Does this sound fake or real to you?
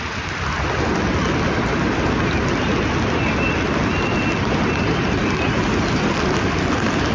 real